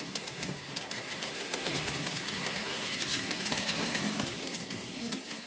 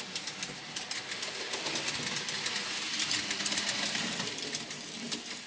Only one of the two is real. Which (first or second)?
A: second